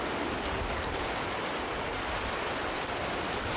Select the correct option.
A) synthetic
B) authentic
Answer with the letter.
A